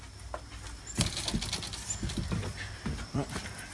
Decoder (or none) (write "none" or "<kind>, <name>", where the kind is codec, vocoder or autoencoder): none